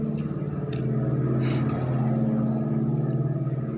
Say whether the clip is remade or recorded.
recorded